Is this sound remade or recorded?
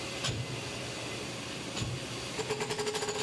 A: recorded